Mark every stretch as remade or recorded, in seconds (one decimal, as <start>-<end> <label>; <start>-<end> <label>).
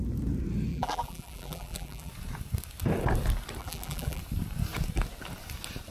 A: 0.0-0.7 recorded; 0.7-2.1 remade; 2.1-3.6 recorded; 3.6-4.2 remade; 4.2-5.9 recorded